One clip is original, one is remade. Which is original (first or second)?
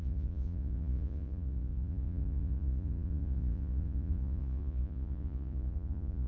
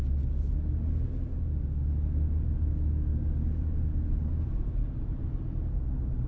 second